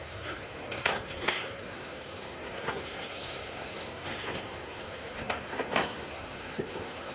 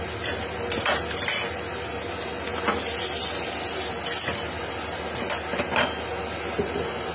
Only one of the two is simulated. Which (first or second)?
first